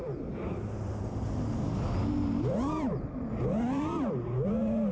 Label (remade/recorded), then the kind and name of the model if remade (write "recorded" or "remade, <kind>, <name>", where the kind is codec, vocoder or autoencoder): recorded